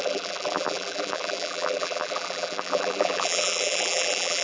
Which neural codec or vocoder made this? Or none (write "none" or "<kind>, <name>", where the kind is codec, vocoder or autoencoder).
vocoder, BigVGAN v2